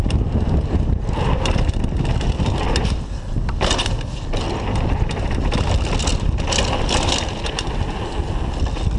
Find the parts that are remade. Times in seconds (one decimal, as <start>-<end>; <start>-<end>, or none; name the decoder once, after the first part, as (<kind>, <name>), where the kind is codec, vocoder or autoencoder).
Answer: none